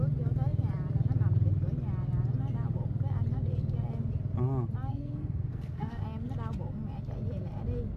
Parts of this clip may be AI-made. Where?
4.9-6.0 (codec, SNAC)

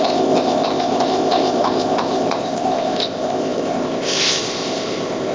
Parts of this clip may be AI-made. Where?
0.0-5.3 (codec, ZipCodec)

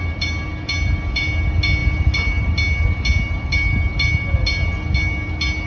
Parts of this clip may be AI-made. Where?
none

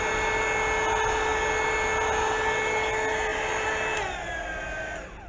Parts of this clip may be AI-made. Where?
none

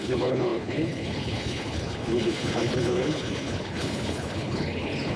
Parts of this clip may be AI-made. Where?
0.0-5.2 (codec, HILCodec)